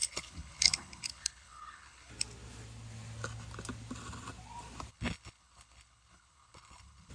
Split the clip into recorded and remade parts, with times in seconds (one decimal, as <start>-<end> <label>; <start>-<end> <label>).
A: 0.0-2.1 remade; 2.1-4.9 recorded; 4.9-7.1 remade